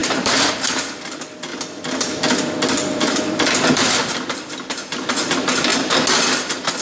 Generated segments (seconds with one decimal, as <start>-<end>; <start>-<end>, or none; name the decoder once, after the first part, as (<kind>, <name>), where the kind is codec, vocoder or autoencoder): 0.0-0.5 (vocoder, BigVGAN v2); 1.5-3.8